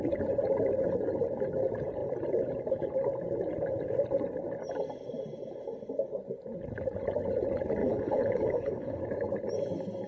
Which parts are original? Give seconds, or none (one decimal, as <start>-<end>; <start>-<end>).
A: 0.0-7.8; 9.0-10.1